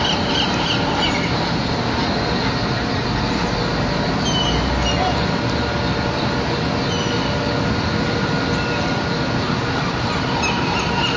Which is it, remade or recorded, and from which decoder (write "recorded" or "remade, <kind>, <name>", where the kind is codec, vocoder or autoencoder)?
recorded